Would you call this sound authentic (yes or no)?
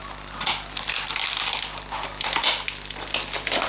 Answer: yes